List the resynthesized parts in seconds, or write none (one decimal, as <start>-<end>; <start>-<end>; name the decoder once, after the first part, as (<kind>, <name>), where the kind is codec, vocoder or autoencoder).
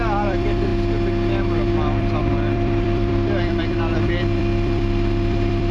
0.0-0.7 (vocoder, BigVGAN v2); 1.3-5.7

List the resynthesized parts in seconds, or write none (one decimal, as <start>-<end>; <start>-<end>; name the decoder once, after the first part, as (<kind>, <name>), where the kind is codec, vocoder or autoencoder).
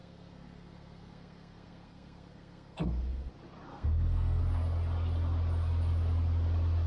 0.0-3.3 (codec, SNAC); 3.7-4.4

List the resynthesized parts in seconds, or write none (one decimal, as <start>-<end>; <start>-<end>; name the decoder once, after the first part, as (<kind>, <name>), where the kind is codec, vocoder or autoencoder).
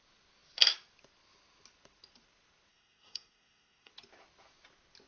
2.7-3.9 (codec, SNAC)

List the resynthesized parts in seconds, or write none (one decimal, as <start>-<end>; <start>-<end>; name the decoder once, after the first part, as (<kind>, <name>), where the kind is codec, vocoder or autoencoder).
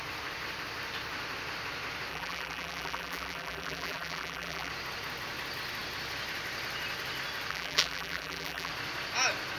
2.1-4.7 (vocoder, BigVGAN v2); 7.5-8.7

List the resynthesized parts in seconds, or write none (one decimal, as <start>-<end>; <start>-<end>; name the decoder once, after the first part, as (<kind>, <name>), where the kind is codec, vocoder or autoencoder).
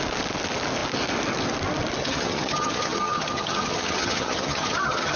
2.0-5.2 (vocoder, HiFi-GAN)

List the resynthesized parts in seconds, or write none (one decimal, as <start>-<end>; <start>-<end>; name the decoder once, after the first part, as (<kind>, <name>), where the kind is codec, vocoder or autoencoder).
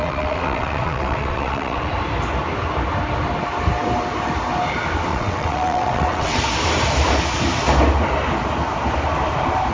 0.0-1.9 (vocoder, WaveNeXt); 5.1-6.4